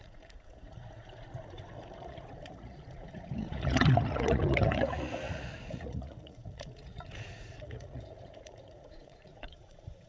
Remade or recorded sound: remade